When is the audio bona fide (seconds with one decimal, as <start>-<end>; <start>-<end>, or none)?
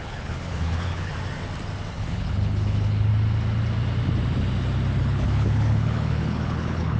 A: 1.1-1.9; 3.1-5.0